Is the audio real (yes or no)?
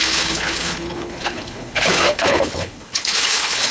no